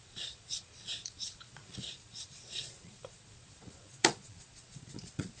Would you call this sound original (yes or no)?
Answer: no